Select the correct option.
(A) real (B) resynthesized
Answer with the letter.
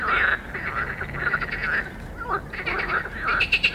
A